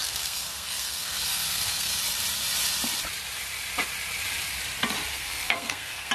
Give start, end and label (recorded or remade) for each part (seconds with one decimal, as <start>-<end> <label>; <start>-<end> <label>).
0.0-2.0 remade; 2.0-5.1 recorded; 5.1-6.1 remade